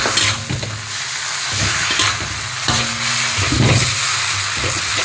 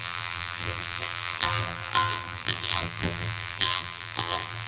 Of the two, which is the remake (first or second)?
second